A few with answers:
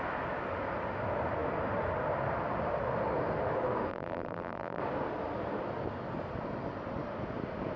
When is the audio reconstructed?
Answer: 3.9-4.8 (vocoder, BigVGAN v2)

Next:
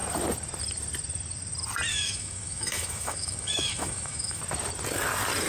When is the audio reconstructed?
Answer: 1.9-4.4 (autoencoder, DAC-VAE)

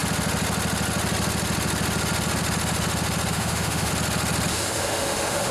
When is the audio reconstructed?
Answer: 3.3-3.9 (autoencoder, DAC-VAE); 4.5-5.5

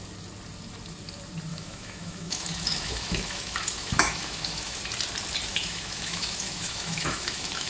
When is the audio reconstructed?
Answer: 1.5-4.8 (autoencoder, DAC-VAE); 5.5-7.7

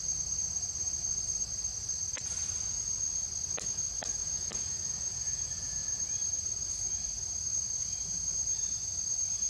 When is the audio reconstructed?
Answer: 4.2-6.0 (vocoder, Vocos)